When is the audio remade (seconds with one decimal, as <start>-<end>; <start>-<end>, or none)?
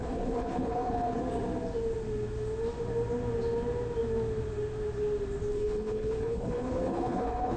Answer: 0.0-1.2; 5.5-7.6